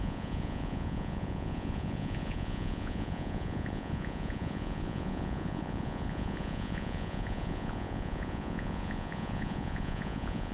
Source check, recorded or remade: remade